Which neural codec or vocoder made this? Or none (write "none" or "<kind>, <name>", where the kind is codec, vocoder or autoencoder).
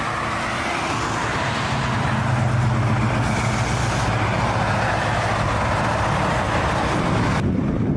none